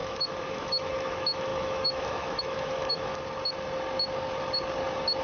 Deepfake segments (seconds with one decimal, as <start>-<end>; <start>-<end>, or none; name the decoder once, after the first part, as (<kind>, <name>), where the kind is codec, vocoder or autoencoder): 0.0-3.1 (autoencoder, DAC-VAE)